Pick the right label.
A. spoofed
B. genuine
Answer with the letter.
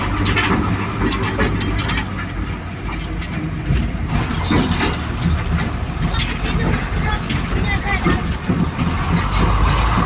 B